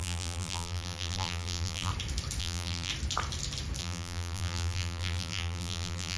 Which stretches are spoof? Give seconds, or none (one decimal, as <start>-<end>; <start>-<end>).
0.0-1.9; 2.4-2.9; 3.8-6.2